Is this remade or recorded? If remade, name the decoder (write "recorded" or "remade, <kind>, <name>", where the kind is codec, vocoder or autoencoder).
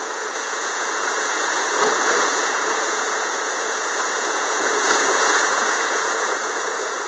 remade, vocoder, Vocos